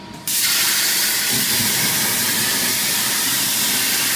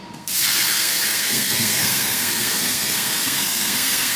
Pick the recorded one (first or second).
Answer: first